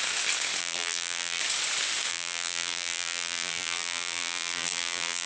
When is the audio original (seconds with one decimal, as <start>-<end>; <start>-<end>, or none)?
0.0-0.6; 1.4-2.1